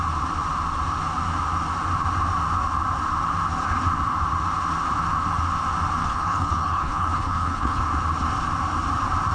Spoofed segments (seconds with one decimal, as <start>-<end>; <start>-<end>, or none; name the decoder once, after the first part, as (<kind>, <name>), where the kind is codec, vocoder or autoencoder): 6.0-7.8 (codec, HILCodec)